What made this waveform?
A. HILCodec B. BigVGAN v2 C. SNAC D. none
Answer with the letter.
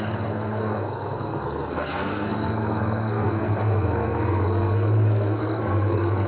C